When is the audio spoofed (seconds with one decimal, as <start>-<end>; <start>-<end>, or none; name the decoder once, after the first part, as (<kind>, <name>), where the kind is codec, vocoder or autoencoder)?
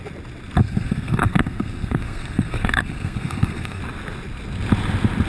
0.6-3.8 (codec, SNAC)